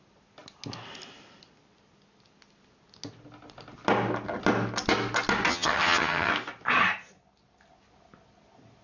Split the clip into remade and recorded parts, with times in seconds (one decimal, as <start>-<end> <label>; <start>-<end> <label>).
0.0-5.5 recorded; 5.5-6.3 remade; 6.3-8.8 recorded